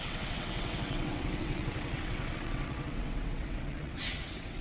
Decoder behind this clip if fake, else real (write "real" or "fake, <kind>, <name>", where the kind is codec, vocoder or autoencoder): fake, vocoder, WaveNeXt